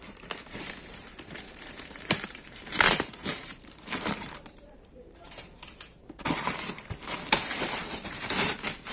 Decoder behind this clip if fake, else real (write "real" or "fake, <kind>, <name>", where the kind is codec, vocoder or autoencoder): fake, vocoder, BigVGAN v2